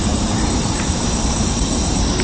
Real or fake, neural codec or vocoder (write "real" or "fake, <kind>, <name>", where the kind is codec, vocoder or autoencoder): fake, vocoder, BigVGAN v2